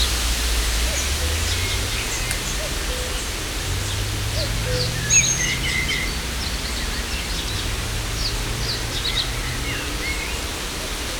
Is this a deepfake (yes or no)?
no